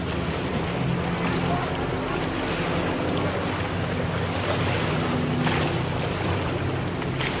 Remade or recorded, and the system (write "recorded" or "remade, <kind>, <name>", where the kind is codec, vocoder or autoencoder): recorded